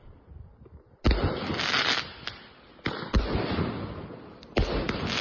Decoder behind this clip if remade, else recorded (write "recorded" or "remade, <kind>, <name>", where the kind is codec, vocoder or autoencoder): recorded